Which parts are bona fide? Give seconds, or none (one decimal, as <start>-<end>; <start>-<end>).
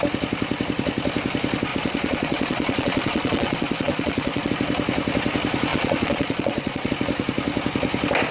0.0-1.7; 4.5-5.7; 6.9-8.3